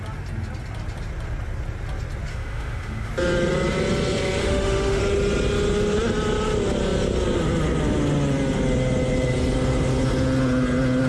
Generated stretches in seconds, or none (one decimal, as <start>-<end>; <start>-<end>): 2.3-3.1; 4.4-5.0